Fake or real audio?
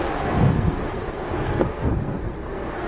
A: fake